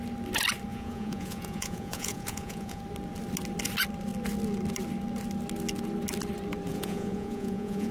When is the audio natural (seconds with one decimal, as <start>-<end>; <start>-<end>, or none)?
0.0-0.7; 2.8-6.7